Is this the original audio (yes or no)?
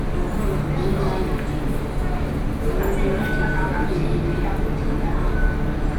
yes